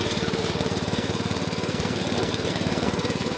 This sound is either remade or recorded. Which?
remade